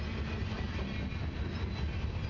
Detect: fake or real real